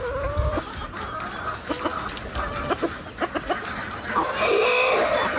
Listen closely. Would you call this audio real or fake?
real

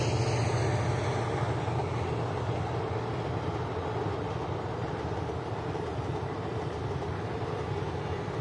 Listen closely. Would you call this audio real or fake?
real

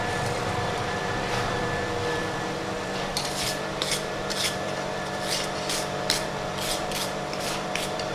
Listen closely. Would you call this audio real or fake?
fake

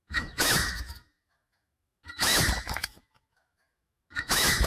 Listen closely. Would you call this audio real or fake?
fake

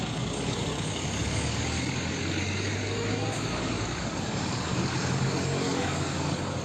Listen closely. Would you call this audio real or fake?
fake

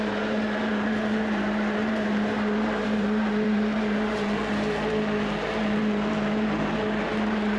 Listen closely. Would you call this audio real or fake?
fake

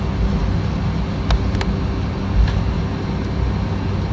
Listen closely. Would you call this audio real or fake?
real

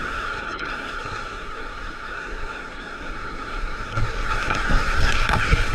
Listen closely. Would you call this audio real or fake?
fake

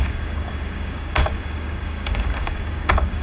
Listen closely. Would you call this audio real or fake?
fake